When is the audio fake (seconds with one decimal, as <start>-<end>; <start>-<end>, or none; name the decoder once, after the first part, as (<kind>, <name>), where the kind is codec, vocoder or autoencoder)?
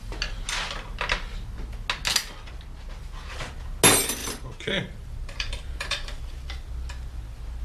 4.2-6.2 (vocoder, BigVGAN v2)